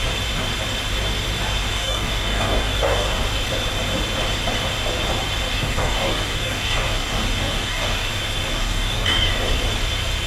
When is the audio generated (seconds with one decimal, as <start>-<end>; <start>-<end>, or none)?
1.7-3.2; 5.5-8.1; 8.5-9.3